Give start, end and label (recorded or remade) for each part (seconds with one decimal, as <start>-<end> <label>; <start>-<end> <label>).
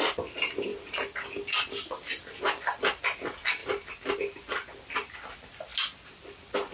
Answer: 0.0-0.7 recorded; 0.7-2.8 remade; 2.8-3.6 recorded; 3.6-4.8 remade; 4.8-6.7 recorded